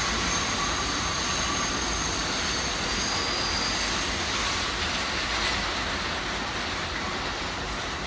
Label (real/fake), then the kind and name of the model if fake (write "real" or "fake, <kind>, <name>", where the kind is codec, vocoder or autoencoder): real